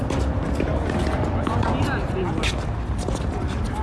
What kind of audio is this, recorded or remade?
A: recorded